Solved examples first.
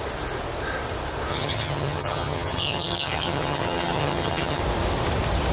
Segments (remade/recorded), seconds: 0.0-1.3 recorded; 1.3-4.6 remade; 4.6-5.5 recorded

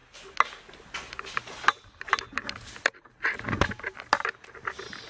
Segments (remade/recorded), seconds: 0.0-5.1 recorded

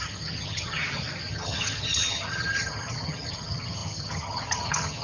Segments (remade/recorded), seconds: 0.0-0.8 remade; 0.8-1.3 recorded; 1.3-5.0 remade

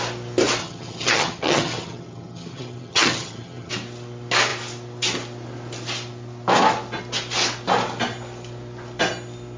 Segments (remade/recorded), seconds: 0.0-0.6 recorded; 0.6-3.7 remade; 3.7-9.6 recorded

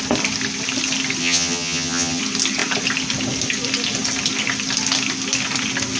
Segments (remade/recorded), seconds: 0.0-1.2 recorded; 1.2-2.2 remade; 2.2-6.0 recorded

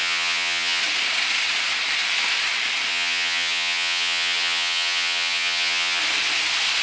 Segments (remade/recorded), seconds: 0.0-0.8 remade; 0.8-2.9 recorded; 2.9-6.0 remade; 6.0-6.8 recorded

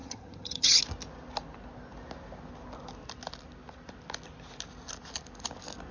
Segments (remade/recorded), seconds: 0.0-0.8 remade; 0.8-5.9 recorded